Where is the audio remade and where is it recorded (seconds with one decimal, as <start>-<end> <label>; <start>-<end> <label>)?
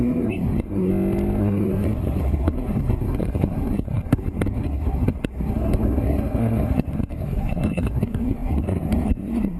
0.0-0.9 remade; 0.9-1.4 recorded; 1.4-9.6 remade